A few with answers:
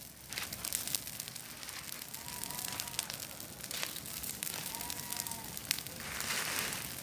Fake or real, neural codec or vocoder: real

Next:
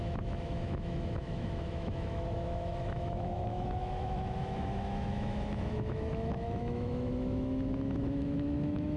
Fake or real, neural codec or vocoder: fake, autoencoder, DAC-VAE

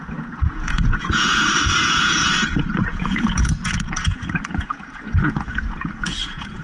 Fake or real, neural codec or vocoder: fake, vocoder, Vocos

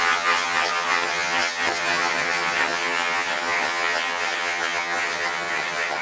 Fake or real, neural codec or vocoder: fake, vocoder, HiFi-GAN